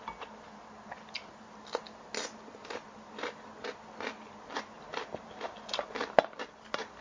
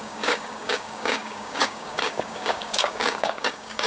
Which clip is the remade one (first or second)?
second